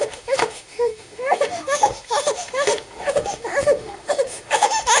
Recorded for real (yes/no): no